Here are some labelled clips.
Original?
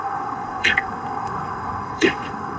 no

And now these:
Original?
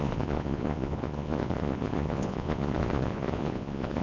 no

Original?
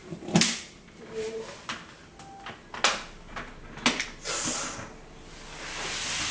yes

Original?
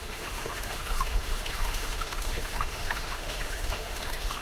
no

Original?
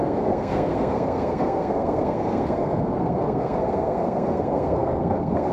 no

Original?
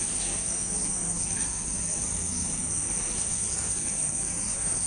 no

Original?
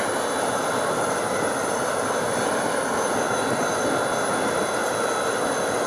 yes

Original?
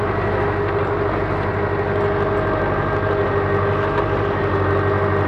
yes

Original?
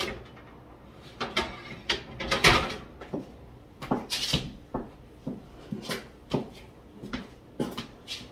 yes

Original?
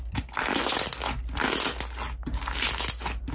yes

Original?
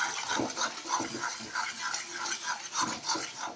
yes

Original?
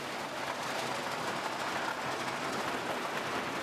yes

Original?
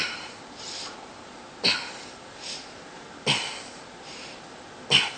yes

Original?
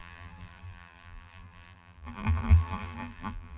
no